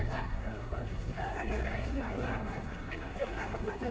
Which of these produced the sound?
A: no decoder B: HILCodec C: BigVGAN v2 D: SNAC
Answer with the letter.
D